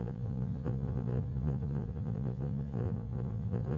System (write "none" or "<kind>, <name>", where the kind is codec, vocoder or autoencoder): vocoder, Vocos